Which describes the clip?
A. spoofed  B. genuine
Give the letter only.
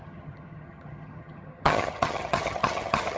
A